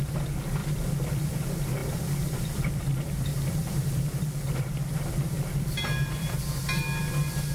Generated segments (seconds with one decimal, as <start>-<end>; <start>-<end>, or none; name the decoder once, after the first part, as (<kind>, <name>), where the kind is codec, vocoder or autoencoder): 0.6-1.3 (vocoder, BigVGAN v2); 1.8-6.3